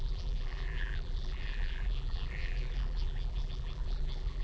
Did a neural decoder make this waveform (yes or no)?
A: yes